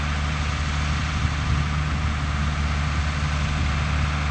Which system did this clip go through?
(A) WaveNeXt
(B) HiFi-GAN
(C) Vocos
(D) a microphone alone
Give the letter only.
D